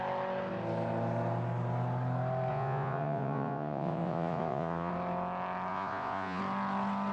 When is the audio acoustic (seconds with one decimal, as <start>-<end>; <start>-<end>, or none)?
0.0-2.5; 4.9-5.7; 6.4-7.1